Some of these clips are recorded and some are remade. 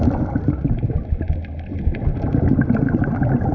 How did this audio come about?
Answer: recorded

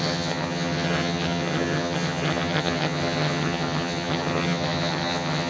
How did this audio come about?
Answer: remade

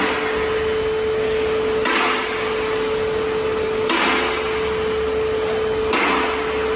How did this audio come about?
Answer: recorded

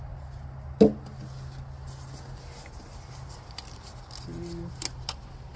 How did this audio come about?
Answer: recorded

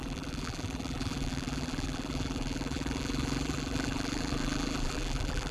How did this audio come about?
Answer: remade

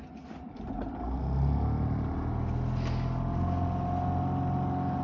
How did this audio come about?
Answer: recorded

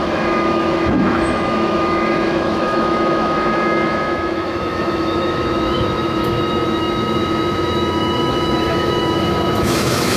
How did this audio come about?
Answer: remade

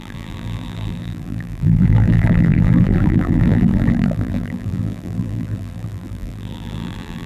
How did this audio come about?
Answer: remade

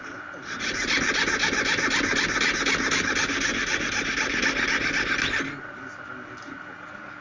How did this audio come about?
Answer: recorded